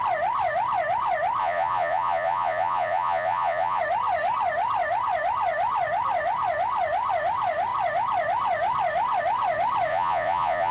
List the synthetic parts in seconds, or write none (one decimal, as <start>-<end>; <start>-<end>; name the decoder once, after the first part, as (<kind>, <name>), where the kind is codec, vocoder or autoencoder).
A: 1.4-3.8 (vocoder, Vocos); 9.9-10.7